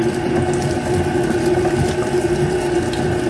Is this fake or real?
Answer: real